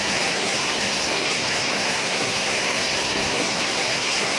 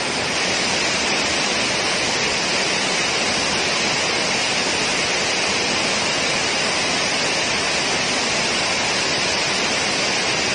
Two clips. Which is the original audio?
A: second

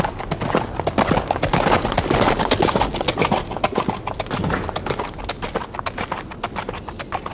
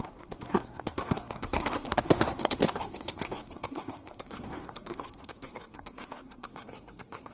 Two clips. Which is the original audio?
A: first